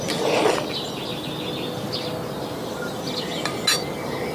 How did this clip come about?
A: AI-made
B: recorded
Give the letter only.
B